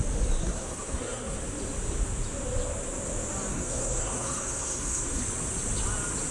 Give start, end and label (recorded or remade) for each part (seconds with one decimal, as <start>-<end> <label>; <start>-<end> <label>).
0.0-0.4 recorded; 0.4-1.4 remade; 1.4-3.5 recorded; 3.5-5.2 remade; 5.2-6.3 recorded